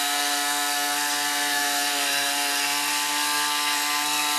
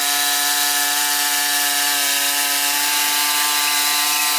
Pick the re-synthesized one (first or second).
first